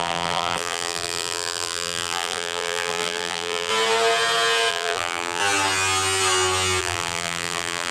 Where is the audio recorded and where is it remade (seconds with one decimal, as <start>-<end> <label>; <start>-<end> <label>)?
0.0-3.7 remade; 3.7-4.7 recorded; 4.7-5.4 remade; 5.4-6.8 recorded; 6.8-7.9 remade